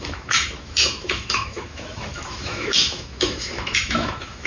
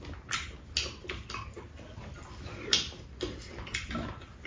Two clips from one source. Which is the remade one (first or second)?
first